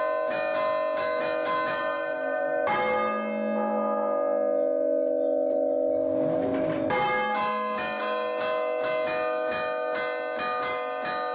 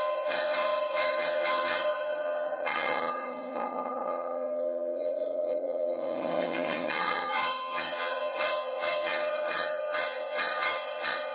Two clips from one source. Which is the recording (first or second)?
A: first